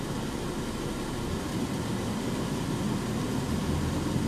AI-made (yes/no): no